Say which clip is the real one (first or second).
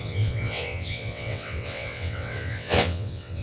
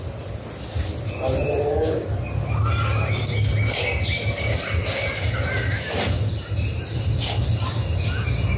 second